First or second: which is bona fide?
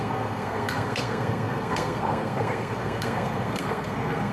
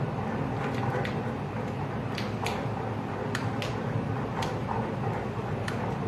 second